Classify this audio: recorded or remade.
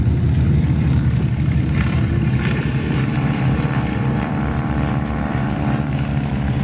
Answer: remade